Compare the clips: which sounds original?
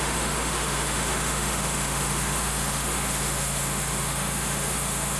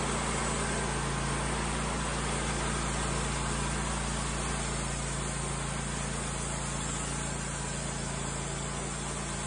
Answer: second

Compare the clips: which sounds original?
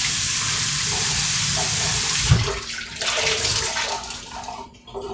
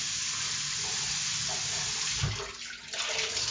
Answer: second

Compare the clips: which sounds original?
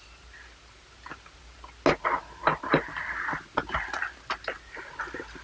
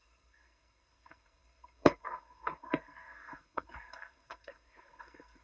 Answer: first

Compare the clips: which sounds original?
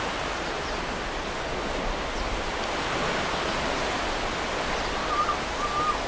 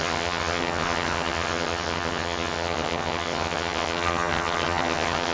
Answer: first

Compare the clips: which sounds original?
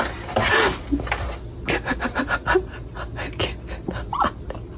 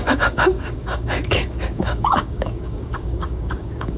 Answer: first